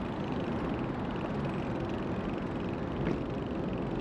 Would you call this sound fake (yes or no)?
no